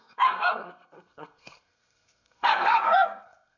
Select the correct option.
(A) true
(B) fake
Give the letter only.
B